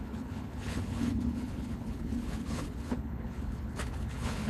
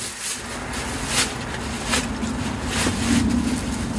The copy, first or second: first